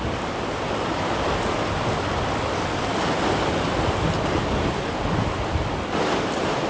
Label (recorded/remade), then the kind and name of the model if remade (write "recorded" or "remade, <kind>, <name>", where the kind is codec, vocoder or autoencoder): recorded